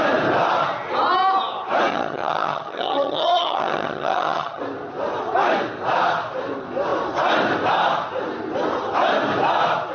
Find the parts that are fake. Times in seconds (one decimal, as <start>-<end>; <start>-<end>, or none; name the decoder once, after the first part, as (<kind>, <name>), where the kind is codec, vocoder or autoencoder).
1.9-4.6 (vocoder, HiFi-GAN)